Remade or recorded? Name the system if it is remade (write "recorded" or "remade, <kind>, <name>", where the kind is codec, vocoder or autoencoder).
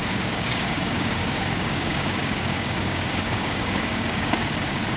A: remade, codec, DAC